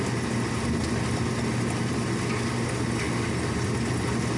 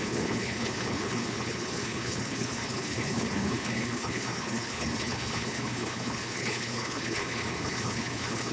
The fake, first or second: second